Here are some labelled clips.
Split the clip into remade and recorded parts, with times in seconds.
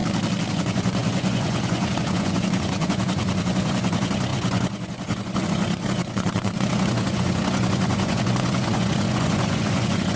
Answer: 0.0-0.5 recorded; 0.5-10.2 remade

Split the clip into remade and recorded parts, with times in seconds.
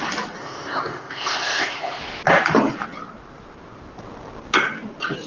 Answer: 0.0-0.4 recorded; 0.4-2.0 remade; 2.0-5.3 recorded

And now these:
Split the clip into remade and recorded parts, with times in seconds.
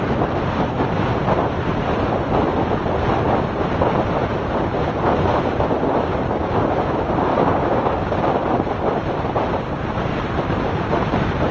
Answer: 0.0-7.3 recorded; 7.3-8.3 remade; 8.3-11.5 recorded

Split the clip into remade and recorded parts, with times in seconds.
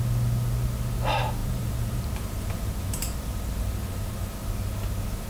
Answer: 0.0-1.4 recorded; 1.4-4.5 remade; 4.5-5.3 recorded